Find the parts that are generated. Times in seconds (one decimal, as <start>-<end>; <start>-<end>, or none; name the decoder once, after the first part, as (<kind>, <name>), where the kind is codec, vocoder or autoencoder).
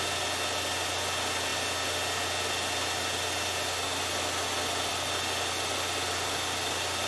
none